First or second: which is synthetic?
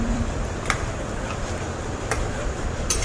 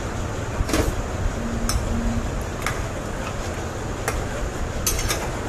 first